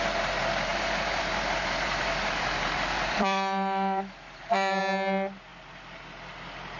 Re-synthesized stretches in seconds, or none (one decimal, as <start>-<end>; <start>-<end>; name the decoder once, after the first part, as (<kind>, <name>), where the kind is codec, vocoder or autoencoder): 0.7-4.8 (vocoder, BigVGAN v2)